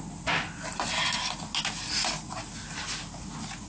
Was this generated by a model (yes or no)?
no